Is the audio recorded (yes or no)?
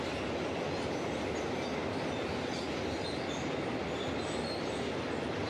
yes